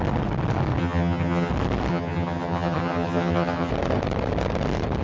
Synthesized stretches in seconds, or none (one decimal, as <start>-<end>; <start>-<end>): 0.8-1.5; 1.9-3.7